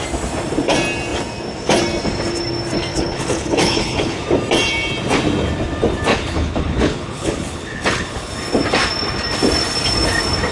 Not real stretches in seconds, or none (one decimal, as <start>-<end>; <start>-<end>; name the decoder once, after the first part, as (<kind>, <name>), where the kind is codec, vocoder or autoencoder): 2.9-4.2 (codec, HILCodec); 6.1-8.3